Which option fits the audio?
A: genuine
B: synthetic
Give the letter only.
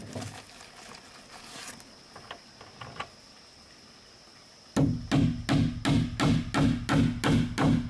A